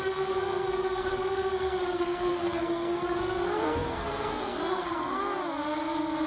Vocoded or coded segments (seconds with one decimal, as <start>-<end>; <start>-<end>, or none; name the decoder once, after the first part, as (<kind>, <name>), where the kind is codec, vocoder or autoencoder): 0.0-5.2 (codec, SNAC)